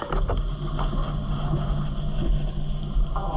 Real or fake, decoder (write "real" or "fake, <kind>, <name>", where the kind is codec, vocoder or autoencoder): real